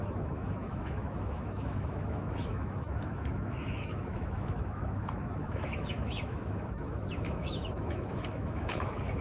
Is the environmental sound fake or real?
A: fake